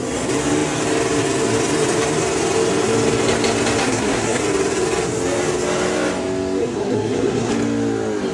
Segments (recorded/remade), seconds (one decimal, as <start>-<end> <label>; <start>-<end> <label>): 0.0-3.8 recorded; 3.8-4.4 remade; 4.4-6.6 recorded; 6.6-7.5 remade; 7.5-8.3 recorded